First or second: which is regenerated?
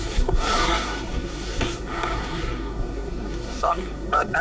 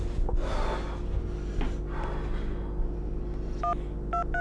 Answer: first